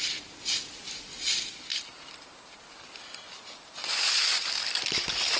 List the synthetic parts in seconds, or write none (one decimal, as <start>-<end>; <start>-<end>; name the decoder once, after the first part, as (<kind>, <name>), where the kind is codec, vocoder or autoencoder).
none